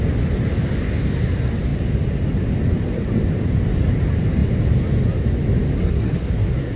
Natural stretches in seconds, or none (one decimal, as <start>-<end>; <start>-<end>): 0.0-5.8